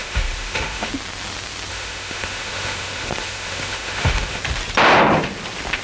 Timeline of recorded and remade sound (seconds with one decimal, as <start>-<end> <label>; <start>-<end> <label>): 0.0-0.9 remade; 0.9-1.7 recorded; 1.7-4.4 remade; 4.4-5.8 recorded